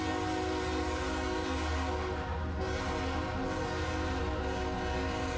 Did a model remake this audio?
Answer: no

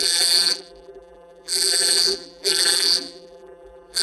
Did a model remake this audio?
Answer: yes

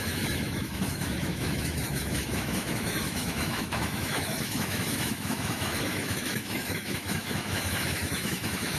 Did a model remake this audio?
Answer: yes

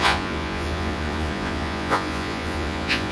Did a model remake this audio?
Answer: yes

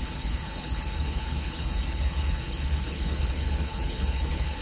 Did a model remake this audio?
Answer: yes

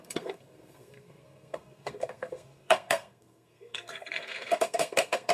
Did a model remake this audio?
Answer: yes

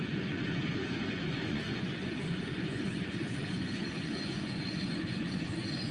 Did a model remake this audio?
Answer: yes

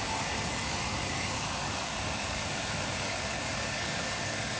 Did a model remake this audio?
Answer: yes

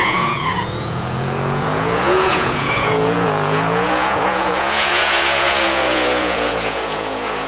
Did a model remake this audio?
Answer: yes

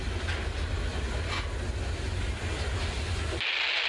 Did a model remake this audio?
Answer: no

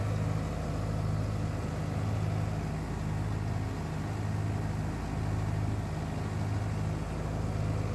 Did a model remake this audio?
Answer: no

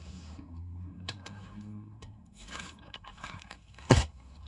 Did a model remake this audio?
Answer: yes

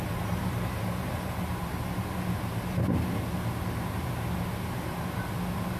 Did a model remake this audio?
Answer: no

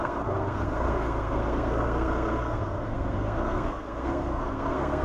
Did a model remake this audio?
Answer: yes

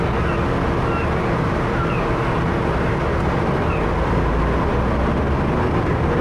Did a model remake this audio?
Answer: no